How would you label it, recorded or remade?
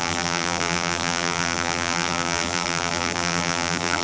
remade